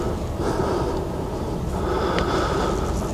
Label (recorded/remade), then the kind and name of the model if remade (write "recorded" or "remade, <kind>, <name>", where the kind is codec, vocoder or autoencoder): recorded